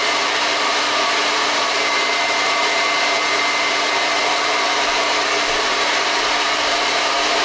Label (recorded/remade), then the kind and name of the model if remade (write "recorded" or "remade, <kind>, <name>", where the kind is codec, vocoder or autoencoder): remade, vocoder, BigVGAN v2